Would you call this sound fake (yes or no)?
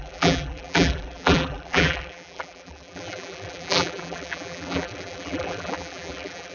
yes